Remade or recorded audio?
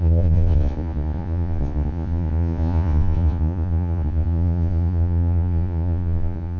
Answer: remade